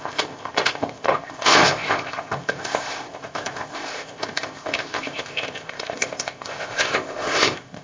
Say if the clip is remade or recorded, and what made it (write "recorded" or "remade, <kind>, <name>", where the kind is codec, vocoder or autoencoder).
remade, codec, ZipCodec